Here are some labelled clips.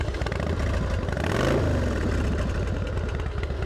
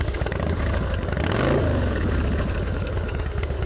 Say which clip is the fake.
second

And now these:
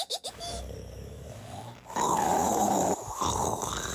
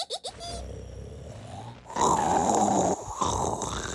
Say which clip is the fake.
first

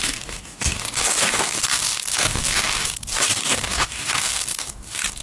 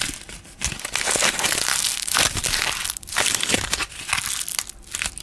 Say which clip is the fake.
first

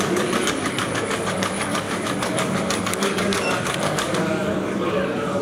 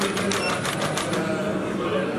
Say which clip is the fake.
first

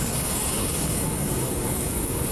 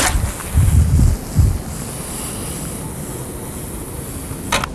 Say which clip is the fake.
first